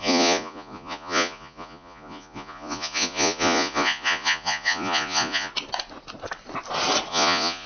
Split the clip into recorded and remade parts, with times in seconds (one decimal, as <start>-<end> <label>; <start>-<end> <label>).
0.0-5.5 remade; 5.5-7.1 recorded; 7.1-7.7 remade